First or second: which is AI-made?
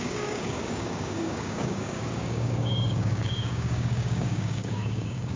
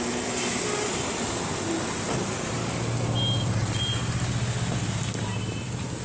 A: first